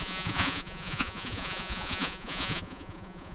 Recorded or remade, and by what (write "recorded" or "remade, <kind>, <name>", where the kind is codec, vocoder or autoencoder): remade, vocoder, Vocos